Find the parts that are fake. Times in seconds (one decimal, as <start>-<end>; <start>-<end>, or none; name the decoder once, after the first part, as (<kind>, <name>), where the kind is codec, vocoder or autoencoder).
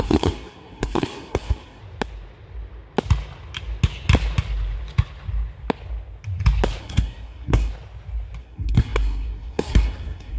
0.0-1.8 (codec, SNAC); 6.8-7.7; 8.4-10.4